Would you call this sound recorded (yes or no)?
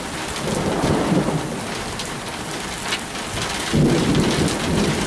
yes